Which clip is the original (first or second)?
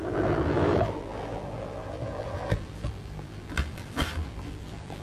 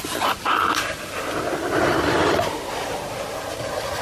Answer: second